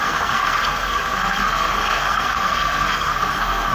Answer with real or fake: fake